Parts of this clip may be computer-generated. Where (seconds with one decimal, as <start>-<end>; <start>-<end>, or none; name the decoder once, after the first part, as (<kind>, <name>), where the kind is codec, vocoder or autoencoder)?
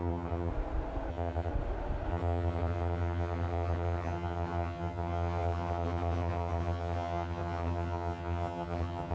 0.0-0.5 (vocoder, HiFi-GAN); 1.1-1.5; 2.1-9.1